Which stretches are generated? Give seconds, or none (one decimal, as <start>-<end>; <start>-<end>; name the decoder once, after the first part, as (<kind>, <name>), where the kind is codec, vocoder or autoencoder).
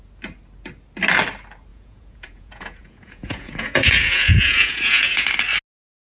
1.7-5.3 (vocoder, Vocos)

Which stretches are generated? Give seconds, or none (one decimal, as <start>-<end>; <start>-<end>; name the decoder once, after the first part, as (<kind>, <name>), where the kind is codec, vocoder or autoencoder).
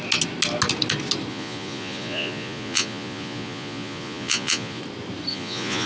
1.3-4.8 (vocoder, Vocos); 5.3-5.9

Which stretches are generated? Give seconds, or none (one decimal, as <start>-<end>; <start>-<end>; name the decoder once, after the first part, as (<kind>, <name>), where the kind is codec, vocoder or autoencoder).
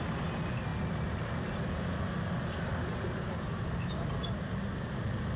none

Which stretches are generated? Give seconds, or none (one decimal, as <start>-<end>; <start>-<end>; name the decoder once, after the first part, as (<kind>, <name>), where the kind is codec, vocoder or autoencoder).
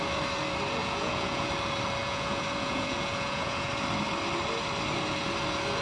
0.8-1.5 (vocoder, Vocos); 2.0-3.7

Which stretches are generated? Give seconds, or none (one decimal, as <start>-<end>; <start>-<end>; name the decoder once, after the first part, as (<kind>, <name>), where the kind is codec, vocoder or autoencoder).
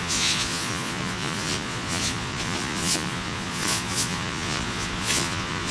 0.0-5.7 (vocoder, Vocos)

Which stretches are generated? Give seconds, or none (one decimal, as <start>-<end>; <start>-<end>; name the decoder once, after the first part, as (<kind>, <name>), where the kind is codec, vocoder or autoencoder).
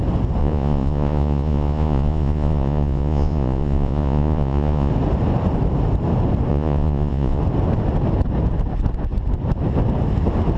0.4-4.9 (vocoder, Vocos); 6.5-7.4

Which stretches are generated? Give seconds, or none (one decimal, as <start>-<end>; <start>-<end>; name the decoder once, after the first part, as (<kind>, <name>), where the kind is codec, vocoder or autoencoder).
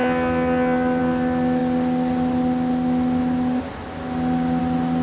none